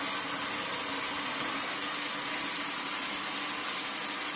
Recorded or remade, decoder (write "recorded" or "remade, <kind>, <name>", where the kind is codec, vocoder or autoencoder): recorded